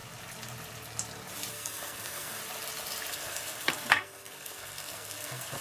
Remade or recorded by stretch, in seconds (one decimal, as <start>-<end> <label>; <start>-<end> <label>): 0.0-1.5 recorded; 1.5-2.4 remade; 2.4-3.1 recorded; 3.1-5.6 remade